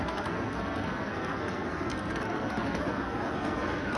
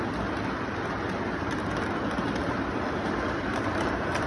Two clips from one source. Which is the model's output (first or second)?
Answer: first